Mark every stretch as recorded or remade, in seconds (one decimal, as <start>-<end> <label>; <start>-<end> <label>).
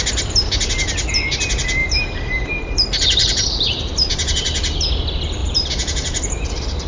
0.0-1.8 recorded; 1.8-4.1 remade; 4.1-5.4 recorded; 5.4-6.9 remade